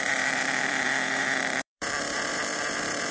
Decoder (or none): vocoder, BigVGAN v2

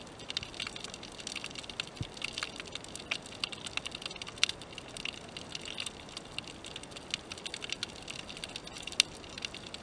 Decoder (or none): none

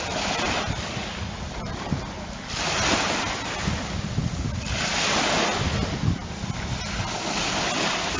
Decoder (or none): none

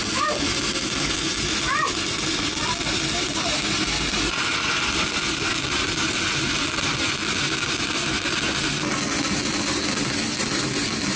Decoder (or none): none